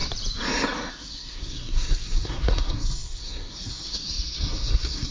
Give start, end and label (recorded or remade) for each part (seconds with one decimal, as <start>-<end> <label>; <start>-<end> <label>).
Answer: 0.0-0.9 recorded; 0.9-5.1 remade